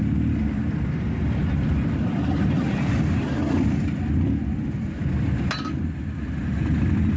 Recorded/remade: recorded